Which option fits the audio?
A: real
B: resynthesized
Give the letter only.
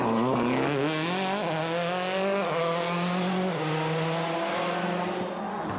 A